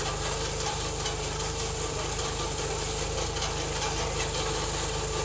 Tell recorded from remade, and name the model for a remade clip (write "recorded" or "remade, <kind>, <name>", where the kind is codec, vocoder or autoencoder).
recorded